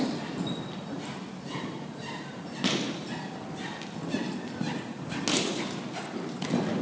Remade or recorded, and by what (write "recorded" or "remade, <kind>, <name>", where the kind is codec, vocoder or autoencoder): recorded